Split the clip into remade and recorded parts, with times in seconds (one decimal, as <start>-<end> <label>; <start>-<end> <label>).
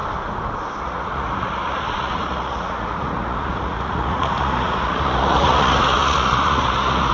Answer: 0.0-0.8 recorded; 0.8-7.1 remade